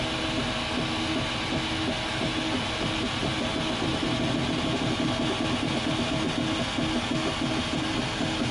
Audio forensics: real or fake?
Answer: real